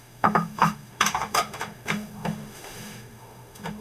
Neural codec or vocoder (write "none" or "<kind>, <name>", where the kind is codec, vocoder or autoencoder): autoencoder, DAC-VAE